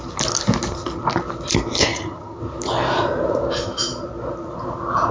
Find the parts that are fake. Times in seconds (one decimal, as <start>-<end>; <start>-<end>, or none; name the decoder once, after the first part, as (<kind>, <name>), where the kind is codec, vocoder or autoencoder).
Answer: 1.9-2.4 (vocoder, HiFi-GAN)